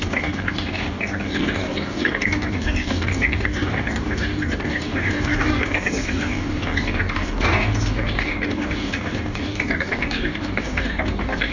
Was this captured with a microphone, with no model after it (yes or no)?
no